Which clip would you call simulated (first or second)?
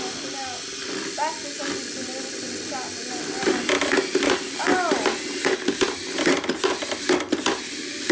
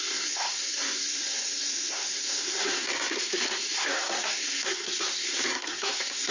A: second